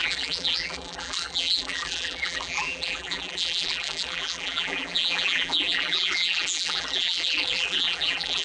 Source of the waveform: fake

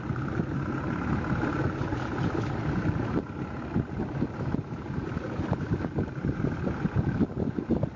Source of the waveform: real